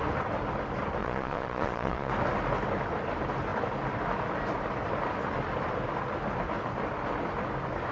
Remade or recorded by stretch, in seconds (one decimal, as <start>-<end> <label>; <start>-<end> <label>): 0.0-1.0 recorded; 1.0-2.1 remade; 2.1-7.9 recorded